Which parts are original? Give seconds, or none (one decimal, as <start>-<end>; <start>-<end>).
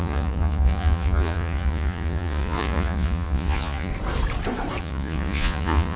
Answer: 3.9-4.8